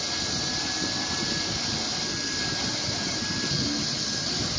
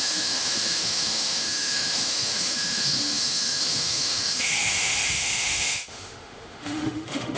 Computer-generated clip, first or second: second